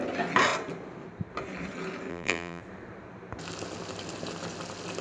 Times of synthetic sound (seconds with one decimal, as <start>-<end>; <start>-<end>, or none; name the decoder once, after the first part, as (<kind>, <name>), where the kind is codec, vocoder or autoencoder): 2.1-2.6 (vocoder, BigVGAN v2)